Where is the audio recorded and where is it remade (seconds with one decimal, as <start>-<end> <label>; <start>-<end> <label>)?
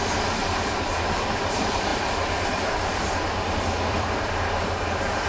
0.0-1.9 recorded; 1.9-5.3 remade